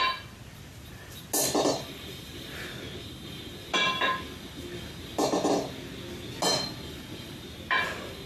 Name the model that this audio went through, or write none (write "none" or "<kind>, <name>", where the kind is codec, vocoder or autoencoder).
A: none